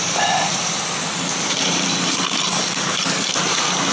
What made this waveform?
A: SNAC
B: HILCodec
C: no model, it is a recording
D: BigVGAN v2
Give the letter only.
C